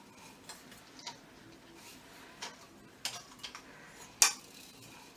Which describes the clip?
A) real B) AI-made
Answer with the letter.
A